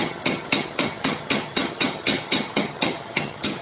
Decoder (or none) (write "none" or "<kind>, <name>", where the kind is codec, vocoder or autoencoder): vocoder, HiFi-GAN